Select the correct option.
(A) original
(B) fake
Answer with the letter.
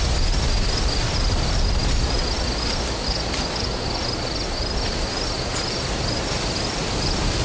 A